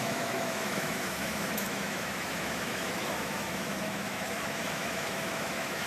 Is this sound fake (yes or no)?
yes